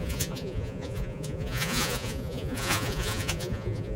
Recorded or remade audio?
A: remade